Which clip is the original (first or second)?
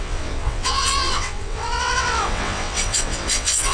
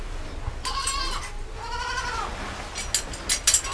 second